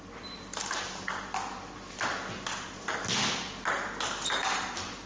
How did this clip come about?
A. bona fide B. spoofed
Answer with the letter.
A